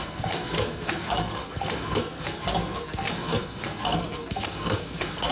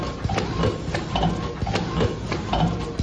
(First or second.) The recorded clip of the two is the second